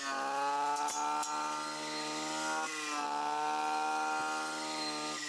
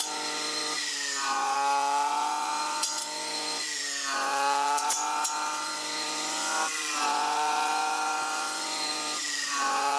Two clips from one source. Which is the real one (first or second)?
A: first